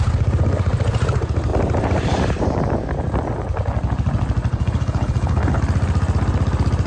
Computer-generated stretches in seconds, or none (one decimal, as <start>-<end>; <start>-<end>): 4.5-5.6

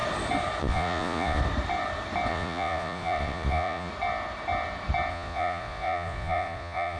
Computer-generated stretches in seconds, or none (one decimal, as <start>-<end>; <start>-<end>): 0.6-1.4; 2.3-3.9; 5.1-7.0

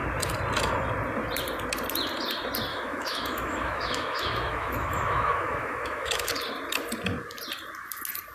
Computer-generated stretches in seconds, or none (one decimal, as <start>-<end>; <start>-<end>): 2.7-6.3